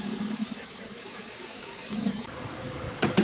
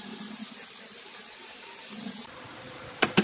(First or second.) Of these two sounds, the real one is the second